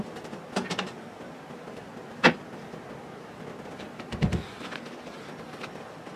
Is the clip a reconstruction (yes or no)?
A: no